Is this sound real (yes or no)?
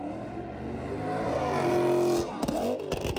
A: yes